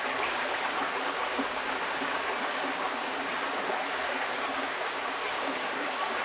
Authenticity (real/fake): fake